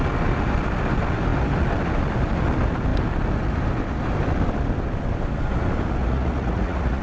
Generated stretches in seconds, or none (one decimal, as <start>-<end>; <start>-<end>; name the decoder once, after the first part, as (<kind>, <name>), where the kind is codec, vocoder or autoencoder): 6.0-7.0 (vocoder, Vocos)